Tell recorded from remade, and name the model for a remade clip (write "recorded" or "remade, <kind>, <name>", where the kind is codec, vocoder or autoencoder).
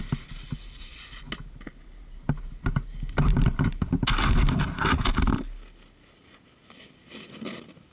recorded